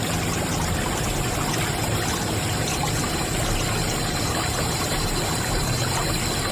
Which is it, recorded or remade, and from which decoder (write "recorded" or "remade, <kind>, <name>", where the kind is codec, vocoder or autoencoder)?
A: recorded